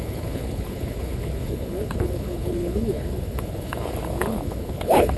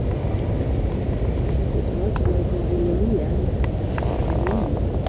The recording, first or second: second